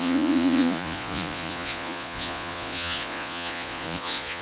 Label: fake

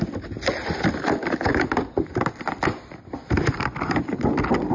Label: real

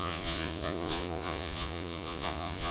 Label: fake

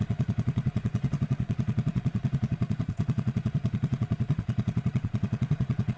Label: fake